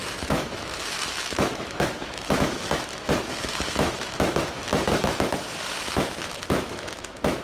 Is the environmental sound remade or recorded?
remade